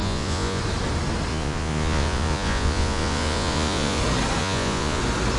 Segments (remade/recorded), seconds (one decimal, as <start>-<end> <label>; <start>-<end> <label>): 0.0-0.6 remade; 0.6-1.3 recorded; 1.3-4.0 remade; 4.0-4.4 recorded; 4.4-5.0 remade; 5.0-5.4 recorded